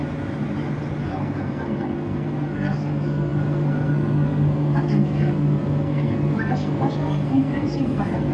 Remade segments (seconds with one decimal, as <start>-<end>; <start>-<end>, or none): 1.0-8.3